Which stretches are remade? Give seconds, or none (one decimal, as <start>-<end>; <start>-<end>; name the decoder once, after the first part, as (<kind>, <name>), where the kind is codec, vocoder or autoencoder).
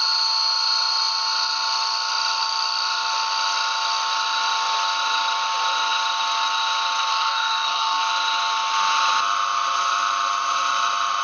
7.1-8.0 (codec, SNAC)